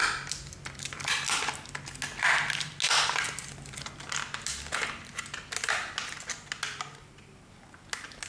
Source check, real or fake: real